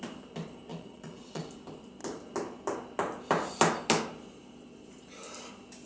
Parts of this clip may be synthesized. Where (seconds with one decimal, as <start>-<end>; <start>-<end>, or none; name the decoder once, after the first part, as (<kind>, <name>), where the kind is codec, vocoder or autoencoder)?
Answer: 0.7-1.4 (vocoder, Vocos)